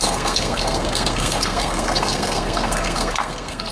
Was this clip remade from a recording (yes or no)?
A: yes